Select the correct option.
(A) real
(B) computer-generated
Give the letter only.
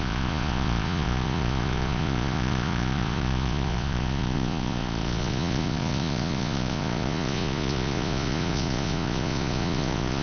B